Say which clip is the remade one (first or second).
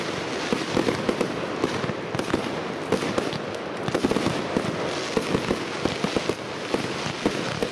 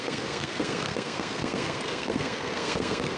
second